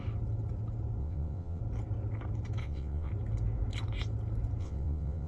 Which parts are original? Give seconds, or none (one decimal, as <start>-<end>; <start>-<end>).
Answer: 0.0-1.0; 1.6-2.6; 3.1-4.6